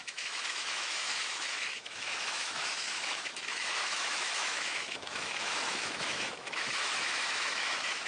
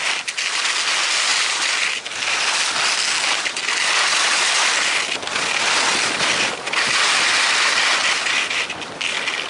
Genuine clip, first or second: second